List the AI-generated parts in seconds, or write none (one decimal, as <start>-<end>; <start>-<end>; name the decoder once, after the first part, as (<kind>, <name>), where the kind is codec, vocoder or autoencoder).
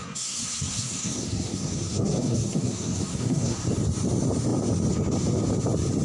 0.0-3.6 (codec, SNAC)